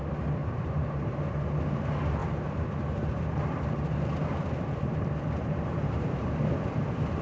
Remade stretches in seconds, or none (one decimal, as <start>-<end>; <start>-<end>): 0.4-1.2; 2.2-6.5